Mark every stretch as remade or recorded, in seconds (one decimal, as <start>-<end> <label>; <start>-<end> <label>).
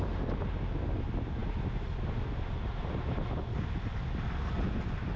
0.0-5.2 recorded